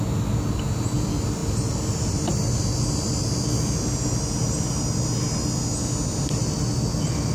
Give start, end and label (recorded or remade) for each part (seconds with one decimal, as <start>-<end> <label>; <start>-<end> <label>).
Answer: 0.0-1.4 recorded; 1.4-4.9 remade; 4.9-7.3 recorded